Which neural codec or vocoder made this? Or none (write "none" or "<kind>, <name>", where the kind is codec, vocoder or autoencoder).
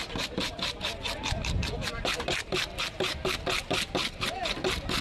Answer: none